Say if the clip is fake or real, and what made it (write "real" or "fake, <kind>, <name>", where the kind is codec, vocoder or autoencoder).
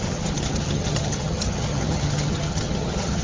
fake, vocoder, HiFi-GAN